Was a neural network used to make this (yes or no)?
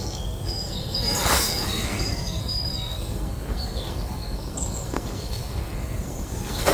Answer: yes